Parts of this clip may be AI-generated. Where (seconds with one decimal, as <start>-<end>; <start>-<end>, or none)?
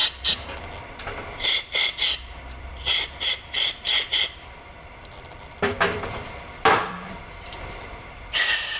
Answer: 0.8-8.8